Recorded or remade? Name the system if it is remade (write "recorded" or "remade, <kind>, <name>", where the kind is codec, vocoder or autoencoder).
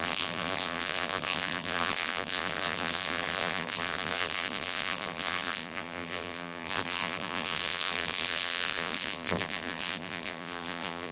remade, vocoder, BigVGAN v2